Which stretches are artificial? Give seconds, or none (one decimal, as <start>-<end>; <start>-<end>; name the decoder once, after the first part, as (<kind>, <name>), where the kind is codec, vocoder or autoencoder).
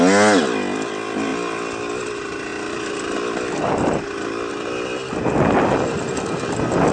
none